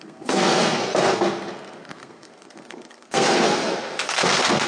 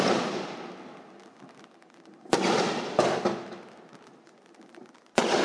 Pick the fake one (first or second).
first